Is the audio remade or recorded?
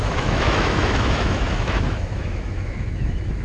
remade